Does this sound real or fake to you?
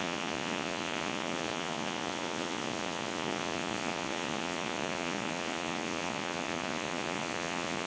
fake